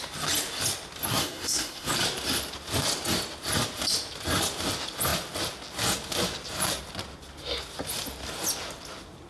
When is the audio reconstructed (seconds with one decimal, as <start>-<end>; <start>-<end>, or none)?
1.1-1.9